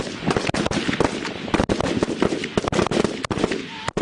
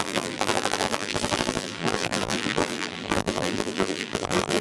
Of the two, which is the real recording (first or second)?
first